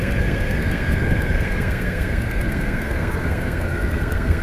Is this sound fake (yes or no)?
yes